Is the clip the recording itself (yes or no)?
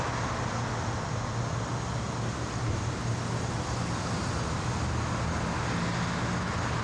yes